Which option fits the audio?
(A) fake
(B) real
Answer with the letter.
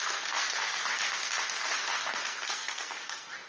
A